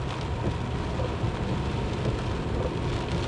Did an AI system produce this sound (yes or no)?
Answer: no